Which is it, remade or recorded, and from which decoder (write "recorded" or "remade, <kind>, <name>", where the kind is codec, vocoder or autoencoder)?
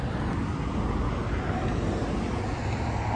recorded